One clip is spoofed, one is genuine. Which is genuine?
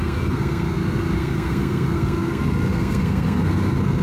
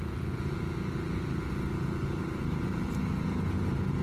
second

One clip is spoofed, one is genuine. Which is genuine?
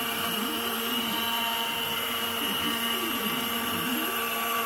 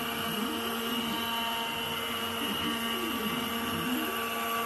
second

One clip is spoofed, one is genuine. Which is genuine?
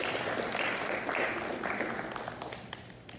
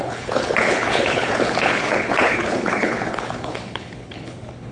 first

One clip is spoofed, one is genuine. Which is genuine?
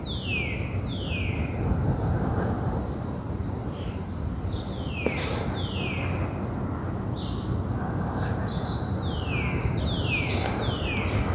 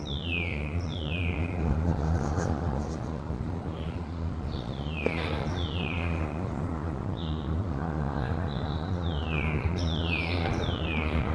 first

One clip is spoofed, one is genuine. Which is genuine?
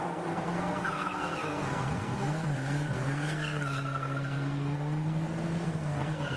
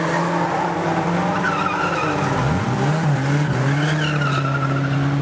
second